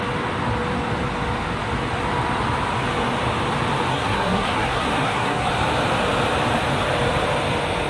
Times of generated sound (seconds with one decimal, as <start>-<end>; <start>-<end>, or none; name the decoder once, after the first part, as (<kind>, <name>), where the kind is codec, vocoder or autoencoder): 3.9-5.5 (codec, SNAC)